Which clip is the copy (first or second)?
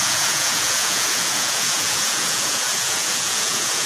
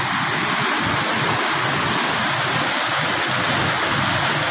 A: first